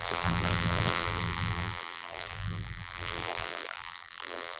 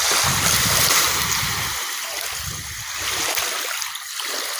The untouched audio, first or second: second